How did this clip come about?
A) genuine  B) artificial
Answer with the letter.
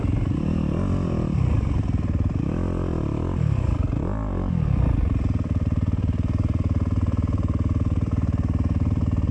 B